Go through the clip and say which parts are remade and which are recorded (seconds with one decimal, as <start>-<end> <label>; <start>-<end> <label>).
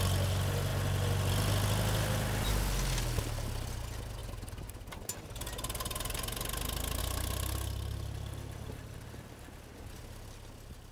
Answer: 0.0-10.9 recorded